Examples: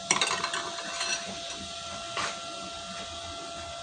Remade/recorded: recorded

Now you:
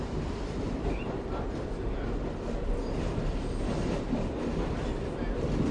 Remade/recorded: recorded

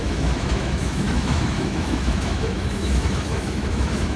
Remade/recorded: remade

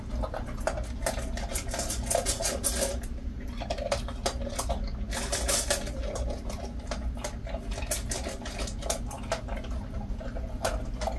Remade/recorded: recorded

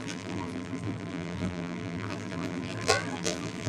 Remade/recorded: remade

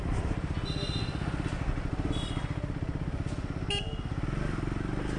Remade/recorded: recorded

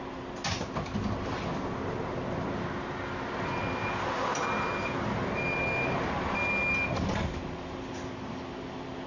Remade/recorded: recorded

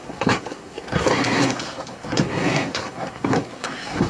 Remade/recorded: remade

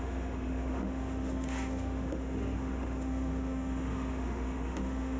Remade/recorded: remade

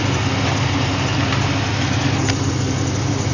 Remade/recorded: recorded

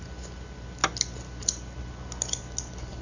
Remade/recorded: recorded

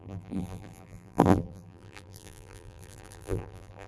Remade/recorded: remade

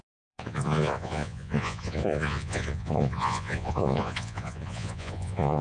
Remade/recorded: remade